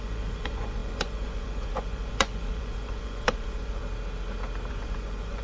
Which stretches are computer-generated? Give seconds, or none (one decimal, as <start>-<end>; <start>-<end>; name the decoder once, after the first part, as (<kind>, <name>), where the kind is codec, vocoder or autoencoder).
0.0-3.8 (vocoder, Vocos); 4.7-5.4